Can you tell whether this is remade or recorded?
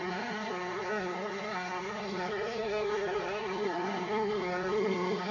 remade